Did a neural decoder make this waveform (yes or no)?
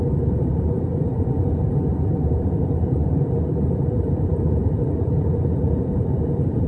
yes